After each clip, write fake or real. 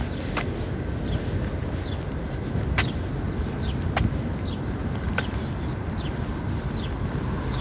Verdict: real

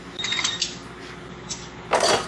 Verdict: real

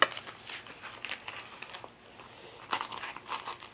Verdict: real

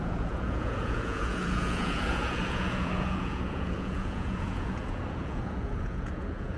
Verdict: fake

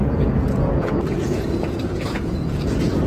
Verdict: fake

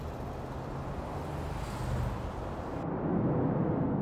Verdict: real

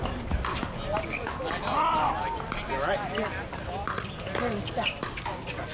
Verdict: real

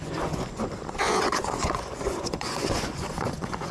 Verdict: fake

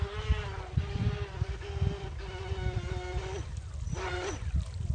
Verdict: real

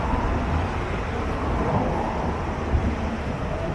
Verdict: real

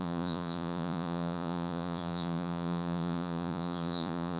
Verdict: fake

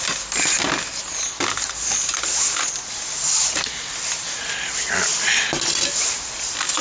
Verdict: real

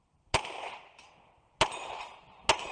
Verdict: real